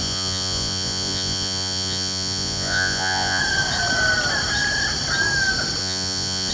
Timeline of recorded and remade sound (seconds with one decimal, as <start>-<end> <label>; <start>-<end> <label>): 0.0-3.4 remade; 3.4-5.8 recorded; 5.8-6.5 remade